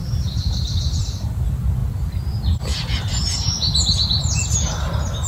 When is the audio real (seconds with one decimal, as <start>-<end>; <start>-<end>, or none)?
1.0-5.3